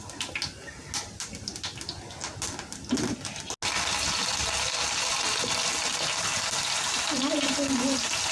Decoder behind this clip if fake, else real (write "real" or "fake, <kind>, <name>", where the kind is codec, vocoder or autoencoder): real